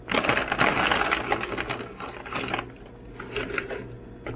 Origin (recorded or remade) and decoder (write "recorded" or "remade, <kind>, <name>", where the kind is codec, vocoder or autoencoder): recorded